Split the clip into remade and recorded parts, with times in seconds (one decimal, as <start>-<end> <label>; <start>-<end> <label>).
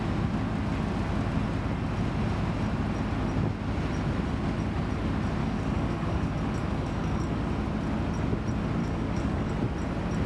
0.0-5.4 recorded; 5.4-7.4 remade; 7.4-8.8 recorded; 8.8-9.5 remade; 9.5-10.3 recorded